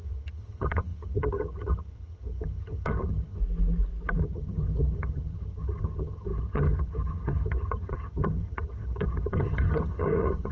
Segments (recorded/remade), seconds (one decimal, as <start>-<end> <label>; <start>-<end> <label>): 0.0-3.4 remade; 3.4-4.2 recorded; 4.2-10.5 remade